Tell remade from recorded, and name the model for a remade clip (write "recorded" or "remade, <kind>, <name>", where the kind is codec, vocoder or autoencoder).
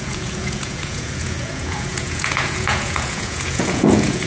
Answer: remade, vocoder, Vocos